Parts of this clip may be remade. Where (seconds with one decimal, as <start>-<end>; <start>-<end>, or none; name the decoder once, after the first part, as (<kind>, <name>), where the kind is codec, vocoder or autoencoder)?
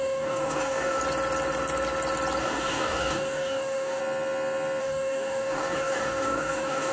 0.0-1.0 (codec, DAC); 2.4-4.0; 4.8-6.9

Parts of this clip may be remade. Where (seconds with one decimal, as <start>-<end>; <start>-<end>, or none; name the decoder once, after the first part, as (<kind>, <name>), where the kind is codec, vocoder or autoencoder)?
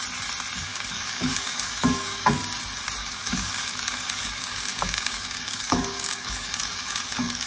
0.6-2.4 (codec, DAC); 3.0-7.5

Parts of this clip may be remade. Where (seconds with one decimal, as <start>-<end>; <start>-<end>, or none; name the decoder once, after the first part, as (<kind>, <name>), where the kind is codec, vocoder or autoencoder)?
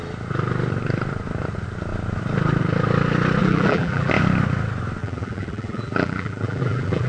3.4-4.1 (vocoder, BigVGAN v2); 5.0-7.1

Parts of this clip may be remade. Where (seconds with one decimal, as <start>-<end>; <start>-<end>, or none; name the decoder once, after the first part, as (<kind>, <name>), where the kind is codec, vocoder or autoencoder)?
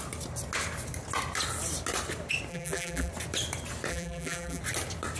2.5-3.1 (vocoder, BigVGAN v2); 3.9-4.6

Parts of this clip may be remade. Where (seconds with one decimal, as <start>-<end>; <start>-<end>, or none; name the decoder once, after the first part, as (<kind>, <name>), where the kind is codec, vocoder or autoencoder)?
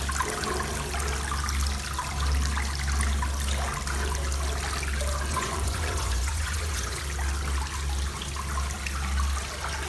5.3-7.0 (vocoder, Vocos)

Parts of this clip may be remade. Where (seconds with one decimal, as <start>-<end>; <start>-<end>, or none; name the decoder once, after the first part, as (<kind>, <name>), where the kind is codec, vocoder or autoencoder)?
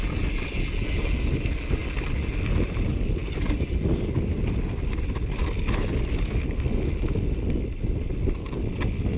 none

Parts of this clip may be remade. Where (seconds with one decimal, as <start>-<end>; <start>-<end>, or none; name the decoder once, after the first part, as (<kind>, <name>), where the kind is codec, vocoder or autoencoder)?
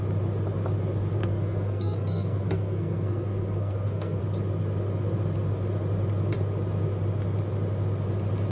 1.2-4.2 (codec, SNAC)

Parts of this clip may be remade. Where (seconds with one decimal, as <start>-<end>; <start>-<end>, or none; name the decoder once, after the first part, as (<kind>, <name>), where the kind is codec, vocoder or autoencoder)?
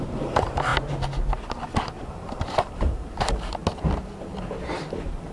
0.0-0.7 (vocoder, BigVGAN v2); 2.1-3.6; 4.8-5.3